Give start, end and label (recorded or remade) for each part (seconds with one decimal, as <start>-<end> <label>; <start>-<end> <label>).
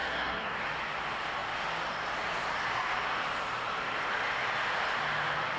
0.0-0.6 remade; 0.6-5.6 recorded